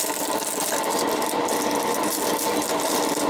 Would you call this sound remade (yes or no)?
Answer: no